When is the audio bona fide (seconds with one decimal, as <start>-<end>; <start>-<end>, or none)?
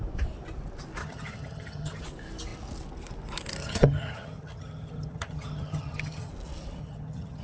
0.0-1.0; 2.0-3.6; 6.3-6.8